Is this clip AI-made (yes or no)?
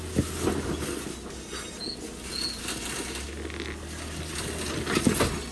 no